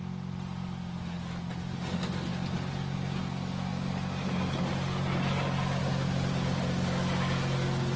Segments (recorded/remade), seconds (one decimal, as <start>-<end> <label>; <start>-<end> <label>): 0.0-8.0 recorded